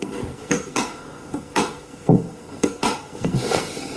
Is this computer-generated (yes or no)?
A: yes